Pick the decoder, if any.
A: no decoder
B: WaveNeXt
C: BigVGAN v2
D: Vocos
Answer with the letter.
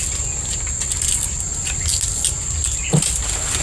A